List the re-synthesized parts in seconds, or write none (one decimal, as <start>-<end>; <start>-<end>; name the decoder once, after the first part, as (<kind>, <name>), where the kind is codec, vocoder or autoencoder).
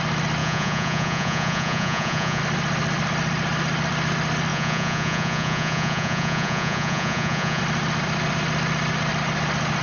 0.4-2.4 (vocoder, Vocos); 4.5-7.6